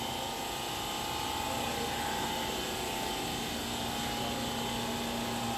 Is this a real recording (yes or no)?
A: yes